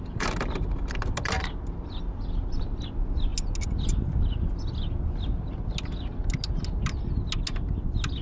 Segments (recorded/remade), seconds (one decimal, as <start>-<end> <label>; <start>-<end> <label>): 0.0-8.2 recorded